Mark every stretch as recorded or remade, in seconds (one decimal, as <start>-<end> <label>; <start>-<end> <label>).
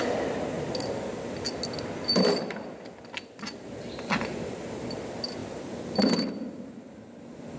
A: 0.0-7.6 recorded